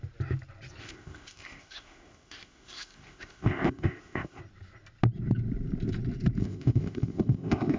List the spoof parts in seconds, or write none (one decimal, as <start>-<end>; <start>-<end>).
0.8-4.4; 6.4-7.8

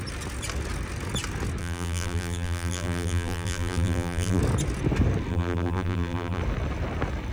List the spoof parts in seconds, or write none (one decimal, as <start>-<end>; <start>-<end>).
1.6-4.4; 5.3-6.4

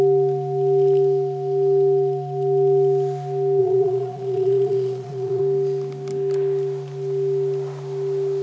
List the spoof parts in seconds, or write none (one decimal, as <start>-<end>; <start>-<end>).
3.6-5.4

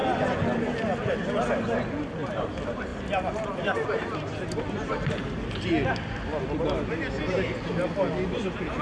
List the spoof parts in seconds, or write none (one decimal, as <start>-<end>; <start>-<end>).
none

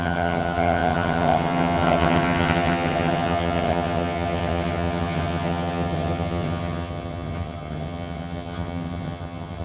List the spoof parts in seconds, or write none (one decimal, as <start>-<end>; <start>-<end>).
0.0-9.6

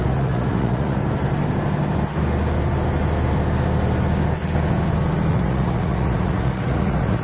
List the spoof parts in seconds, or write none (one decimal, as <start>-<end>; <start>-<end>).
0.0-1.0; 5.3-7.2

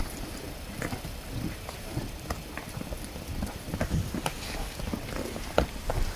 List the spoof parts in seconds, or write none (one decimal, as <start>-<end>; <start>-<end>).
none